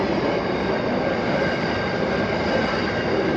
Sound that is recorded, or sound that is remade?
recorded